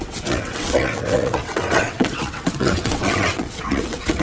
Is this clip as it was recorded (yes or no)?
no